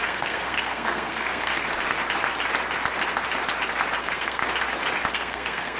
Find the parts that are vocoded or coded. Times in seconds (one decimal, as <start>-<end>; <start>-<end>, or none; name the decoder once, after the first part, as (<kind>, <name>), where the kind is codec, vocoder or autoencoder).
0.0-1.5 (codec, SNAC); 4.0-4.4; 5.1-5.8